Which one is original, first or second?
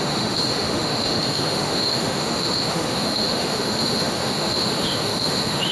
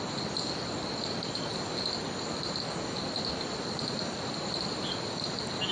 second